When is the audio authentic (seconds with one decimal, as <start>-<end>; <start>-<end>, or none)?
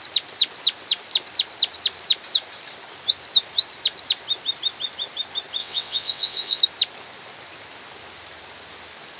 0.0-5.6; 6.6-9.2